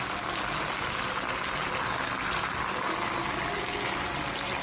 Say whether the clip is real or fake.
real